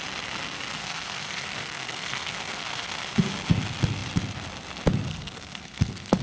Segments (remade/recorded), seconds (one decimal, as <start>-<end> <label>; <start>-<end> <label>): 0.0-0.8 recorded; 0.8-3.1 remade; 3.1-5.1 recorded; 5.1-6.2 remade

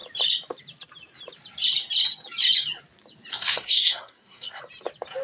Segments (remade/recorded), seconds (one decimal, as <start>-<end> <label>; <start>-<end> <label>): 0.0-3.3 recorded; 3.3-4.6 remade; 4.6-5.2 recorded

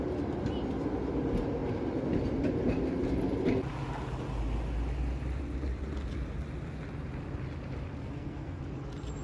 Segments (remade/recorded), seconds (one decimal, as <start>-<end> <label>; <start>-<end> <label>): 0.0-8.0 recorded; 8.0-8.6 remade; 8.6-9.2 recorded

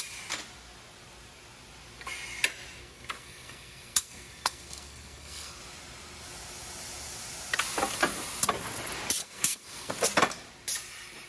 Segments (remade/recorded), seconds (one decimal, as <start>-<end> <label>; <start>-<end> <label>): 0.0-2.8 recorded; 2.8-5.6 remade; 5.6-9.2 recorded; 9.2-9.9 remade; 9.9-11.3 recorded

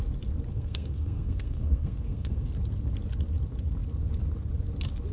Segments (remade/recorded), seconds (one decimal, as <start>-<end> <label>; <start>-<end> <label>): 0.0-0.5 recorded; 0.5-2.5 remade; 2.5-5.1 recorded